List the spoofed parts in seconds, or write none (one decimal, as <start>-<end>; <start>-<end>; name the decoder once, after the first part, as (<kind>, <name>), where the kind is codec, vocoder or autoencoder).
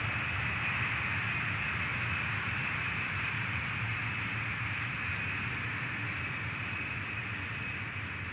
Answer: 1.9-3.6 (vocoder, BigVGAN v2)